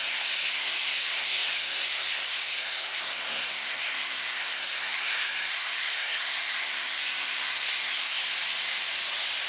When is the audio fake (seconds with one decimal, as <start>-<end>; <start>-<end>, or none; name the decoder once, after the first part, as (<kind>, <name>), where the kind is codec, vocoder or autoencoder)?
0.0-8.2 (codec, SNAC)